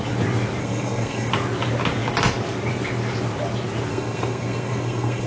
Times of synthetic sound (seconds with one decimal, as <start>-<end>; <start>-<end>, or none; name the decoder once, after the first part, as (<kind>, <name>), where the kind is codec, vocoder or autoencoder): 0.6-1.3 (codec, SNAC); 3.9-5.3